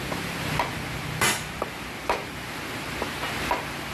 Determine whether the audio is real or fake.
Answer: real